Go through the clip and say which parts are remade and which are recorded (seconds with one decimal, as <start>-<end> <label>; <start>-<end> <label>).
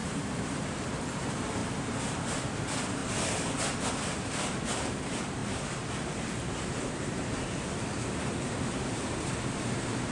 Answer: 0.0-3.0 remade; 3.0-3.9 recorded; 3.9-10.1 remade